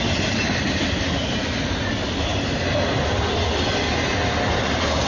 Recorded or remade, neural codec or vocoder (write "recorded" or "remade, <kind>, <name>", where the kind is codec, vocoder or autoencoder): recorded